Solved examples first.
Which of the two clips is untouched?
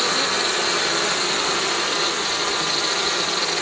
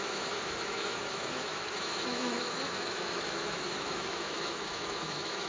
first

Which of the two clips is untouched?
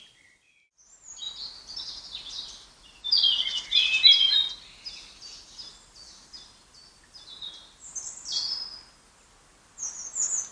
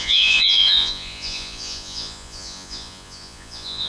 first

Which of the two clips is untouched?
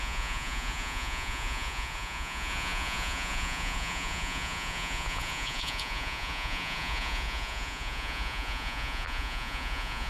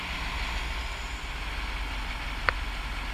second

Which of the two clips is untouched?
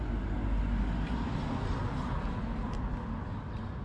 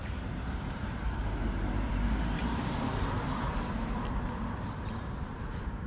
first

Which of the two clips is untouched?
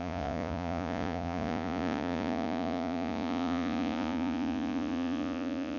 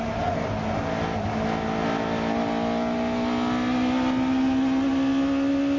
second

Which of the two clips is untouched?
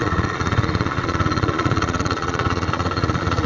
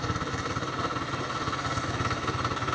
second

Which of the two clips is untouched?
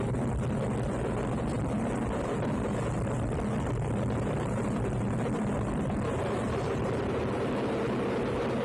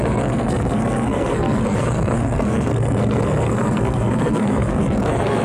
first